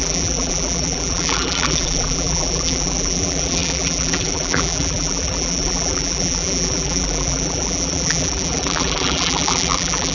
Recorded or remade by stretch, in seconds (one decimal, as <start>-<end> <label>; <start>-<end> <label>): 0.0-10.1 remade